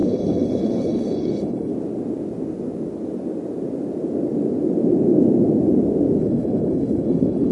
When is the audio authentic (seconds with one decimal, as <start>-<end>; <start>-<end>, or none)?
1.7-6.2